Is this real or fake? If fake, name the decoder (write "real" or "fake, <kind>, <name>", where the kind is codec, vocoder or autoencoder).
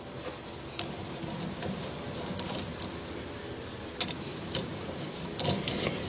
real